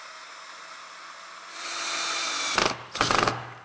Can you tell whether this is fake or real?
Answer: real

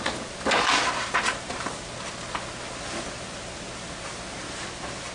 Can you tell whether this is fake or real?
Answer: real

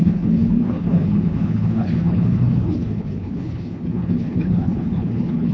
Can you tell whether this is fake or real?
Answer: fake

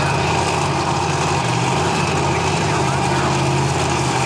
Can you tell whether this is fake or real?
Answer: real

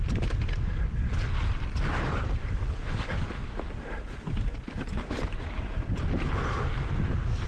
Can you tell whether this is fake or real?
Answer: real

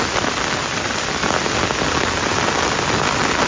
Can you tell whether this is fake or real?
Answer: real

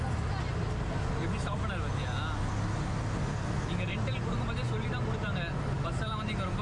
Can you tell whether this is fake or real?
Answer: real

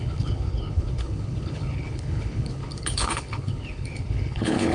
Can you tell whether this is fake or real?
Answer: fake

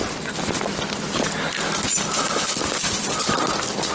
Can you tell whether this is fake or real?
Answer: real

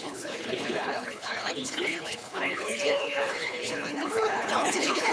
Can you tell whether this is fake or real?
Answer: fake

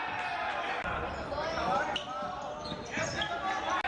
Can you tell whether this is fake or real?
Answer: real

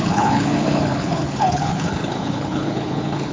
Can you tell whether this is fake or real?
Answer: fake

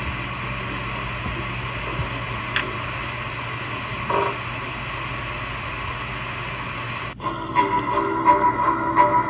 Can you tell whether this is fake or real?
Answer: real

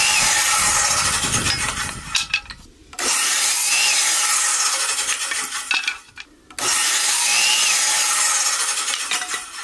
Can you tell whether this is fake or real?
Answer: real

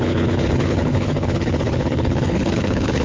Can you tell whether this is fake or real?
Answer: fake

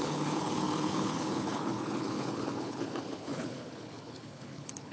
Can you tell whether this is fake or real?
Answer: fake